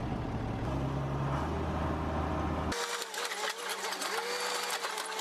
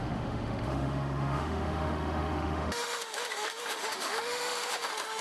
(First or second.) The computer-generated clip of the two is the second